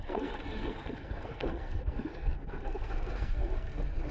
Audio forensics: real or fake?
fake